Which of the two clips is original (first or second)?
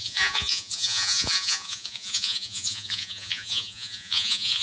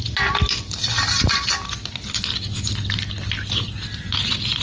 second